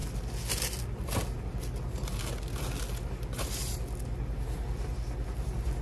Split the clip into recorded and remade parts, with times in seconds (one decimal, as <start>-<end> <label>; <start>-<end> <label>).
0.0-5.8 recorded